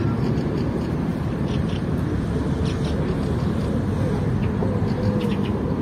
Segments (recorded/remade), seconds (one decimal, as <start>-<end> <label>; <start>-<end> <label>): 0.0-1.1 recorded; 1.1-1.9 remade; 1.9-5.8 recorded